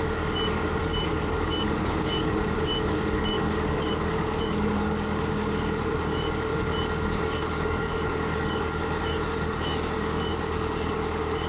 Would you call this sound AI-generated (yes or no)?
yes